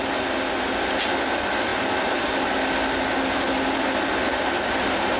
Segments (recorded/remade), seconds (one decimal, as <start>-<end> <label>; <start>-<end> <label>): 0.0-5.2 recorded